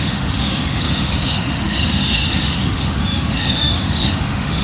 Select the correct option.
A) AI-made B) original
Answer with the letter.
A